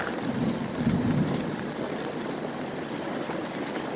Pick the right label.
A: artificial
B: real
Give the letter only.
A